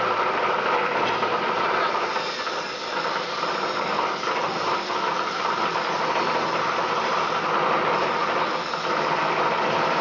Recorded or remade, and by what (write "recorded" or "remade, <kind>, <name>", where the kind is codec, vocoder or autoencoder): recorded